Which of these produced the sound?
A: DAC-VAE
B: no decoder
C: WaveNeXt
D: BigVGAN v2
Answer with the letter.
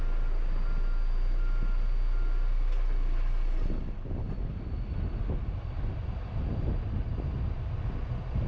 B